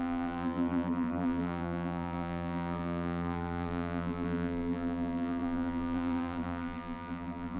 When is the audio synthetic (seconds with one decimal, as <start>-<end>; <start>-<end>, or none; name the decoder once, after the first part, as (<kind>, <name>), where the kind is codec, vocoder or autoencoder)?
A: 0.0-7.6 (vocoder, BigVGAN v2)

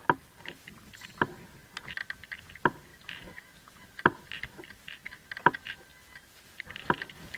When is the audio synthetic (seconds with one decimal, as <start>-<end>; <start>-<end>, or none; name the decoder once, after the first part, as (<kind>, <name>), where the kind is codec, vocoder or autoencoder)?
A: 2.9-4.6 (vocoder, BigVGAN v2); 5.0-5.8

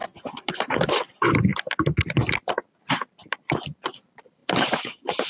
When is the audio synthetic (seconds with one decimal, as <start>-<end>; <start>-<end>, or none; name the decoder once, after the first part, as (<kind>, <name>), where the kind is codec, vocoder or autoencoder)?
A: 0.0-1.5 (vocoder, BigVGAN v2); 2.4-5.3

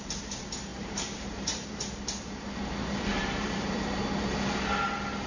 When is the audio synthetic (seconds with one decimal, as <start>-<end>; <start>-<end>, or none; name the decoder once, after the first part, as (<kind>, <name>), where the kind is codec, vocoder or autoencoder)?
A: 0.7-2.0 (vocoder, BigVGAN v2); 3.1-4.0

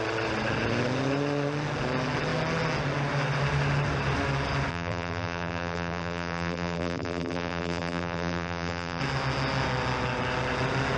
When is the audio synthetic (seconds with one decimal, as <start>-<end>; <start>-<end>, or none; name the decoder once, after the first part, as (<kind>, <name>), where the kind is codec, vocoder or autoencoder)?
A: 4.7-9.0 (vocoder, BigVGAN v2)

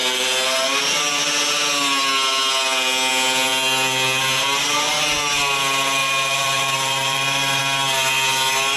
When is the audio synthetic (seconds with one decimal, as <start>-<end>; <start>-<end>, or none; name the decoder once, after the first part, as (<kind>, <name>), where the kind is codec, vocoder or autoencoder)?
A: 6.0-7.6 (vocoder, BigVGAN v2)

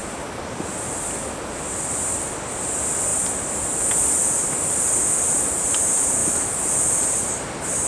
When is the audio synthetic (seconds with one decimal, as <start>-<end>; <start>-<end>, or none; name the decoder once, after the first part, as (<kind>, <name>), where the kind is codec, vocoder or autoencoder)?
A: 0.0-0.9 (vocoder, BigVGAN v2); 3.1-3.8; 6.2-7.0

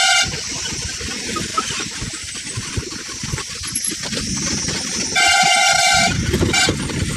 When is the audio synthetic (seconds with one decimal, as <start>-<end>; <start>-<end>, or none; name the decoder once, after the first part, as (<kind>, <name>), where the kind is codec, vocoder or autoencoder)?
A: 1.5-2.7 (vocoder, BigVGAN v2)